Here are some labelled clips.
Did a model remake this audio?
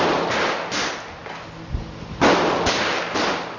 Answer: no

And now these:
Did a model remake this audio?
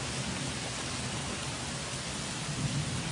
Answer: no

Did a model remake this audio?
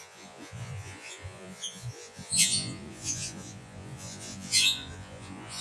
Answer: yes